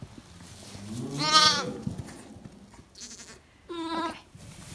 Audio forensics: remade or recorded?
recorded